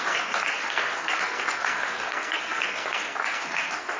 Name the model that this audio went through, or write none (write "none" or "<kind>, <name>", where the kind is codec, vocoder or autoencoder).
codec, SNAC